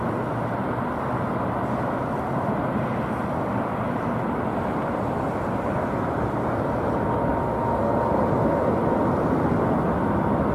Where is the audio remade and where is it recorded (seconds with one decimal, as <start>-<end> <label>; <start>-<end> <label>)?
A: 0.0-10.5 recorded